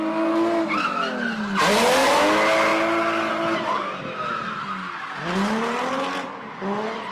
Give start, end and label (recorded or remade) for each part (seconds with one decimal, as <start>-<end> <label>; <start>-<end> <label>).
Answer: 0.0-7.1 recorded